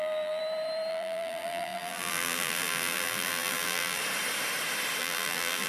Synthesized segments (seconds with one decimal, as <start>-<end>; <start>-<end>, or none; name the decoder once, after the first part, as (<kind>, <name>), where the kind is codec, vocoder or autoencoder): 0.0-0.4 (vocoder, BigVGAN v2); 0.9-4.0; 5.0-5.7